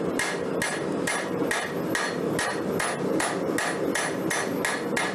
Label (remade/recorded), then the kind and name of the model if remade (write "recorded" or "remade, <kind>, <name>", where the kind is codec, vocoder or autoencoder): recorded